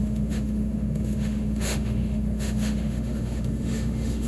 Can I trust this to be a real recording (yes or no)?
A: no